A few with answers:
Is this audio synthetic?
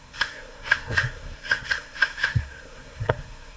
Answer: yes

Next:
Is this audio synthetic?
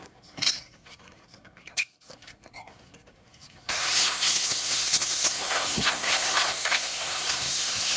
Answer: yes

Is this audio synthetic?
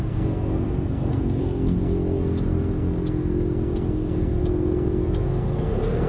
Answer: yes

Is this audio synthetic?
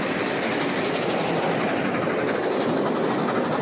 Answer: no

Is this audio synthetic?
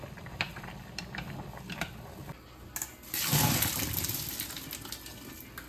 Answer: no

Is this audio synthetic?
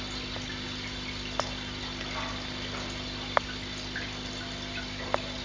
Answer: no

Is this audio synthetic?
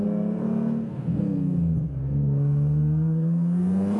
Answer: yes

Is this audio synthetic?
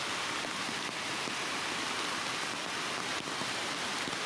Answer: no